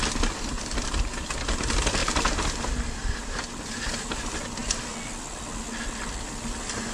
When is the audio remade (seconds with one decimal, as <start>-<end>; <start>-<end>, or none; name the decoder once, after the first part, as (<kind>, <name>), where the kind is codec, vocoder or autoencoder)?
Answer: none